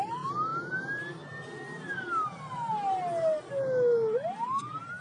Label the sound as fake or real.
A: real